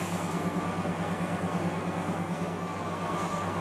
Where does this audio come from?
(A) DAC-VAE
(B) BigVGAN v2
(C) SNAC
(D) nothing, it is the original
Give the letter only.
C